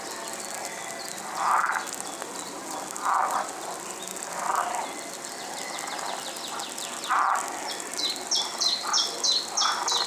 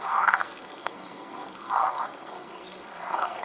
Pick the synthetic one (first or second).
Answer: second